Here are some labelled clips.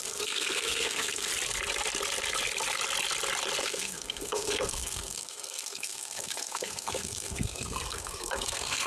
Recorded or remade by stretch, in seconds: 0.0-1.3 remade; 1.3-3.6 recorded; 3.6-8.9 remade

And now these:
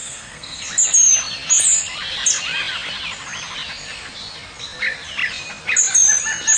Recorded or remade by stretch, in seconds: 0.0-0.6 remade; 0.6-6.6 recorded

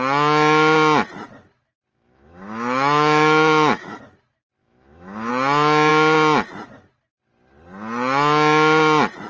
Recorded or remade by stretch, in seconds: 0.0-1.9 recorded; 1.9-4.0 remade; 4.0-4.6 recorded; 4.6-5.3 remade; 5.3-9.3 recorded

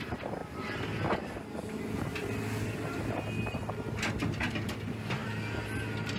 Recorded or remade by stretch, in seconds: 0.0-6.2 recorded